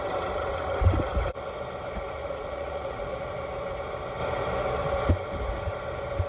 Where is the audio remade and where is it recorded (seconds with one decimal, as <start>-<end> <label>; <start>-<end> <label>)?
0.0-2.2 recorded; 2.2-3.3 remade; 3.3-6.3 recorded